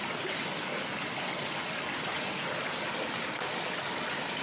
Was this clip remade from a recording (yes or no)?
no